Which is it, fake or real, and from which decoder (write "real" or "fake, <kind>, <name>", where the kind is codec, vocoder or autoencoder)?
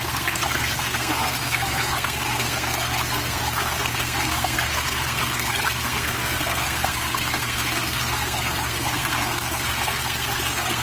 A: fake, codec, SNAC